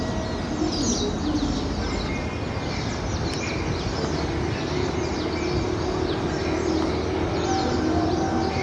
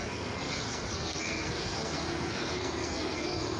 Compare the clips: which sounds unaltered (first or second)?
first